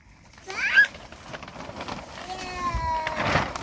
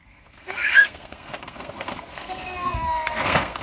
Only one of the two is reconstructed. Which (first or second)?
second